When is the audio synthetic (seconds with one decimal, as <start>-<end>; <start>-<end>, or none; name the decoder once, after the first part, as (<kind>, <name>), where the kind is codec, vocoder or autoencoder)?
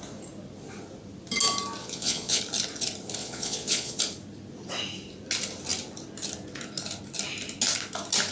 1.8-2.4 (vocoder, Vocos); 3.2-4.0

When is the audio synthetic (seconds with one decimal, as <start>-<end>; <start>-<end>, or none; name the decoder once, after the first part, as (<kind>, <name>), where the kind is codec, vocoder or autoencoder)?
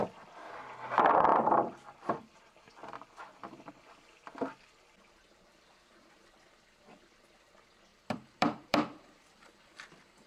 1.3-2.3 (vocoder, BigVGAN v2); 7.9-10.3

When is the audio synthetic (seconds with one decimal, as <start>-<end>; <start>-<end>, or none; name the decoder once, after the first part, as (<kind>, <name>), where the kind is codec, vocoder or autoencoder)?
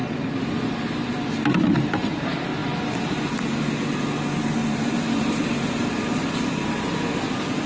0.0-0.5 (vocoder, BigVGAN v2); 4.6-6.8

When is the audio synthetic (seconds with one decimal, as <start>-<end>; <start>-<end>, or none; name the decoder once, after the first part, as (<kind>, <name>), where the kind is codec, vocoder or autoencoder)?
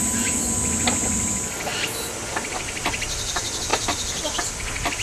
1.7-2.2 (vocoder, BigVGAN v2)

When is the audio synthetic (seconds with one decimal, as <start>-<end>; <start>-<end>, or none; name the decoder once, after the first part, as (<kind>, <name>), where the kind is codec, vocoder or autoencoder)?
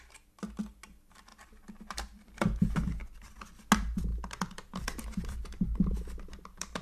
4.1-6.8 (vocoder, BigVGAN v2)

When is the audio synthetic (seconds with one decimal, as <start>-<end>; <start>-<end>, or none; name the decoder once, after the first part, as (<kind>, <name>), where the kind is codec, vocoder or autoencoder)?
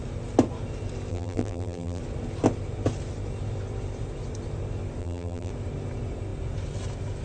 1.1-2.0 (vocoder, BigVGAN v2); 5.0-5.5